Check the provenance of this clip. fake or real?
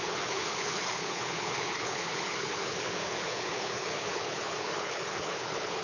fake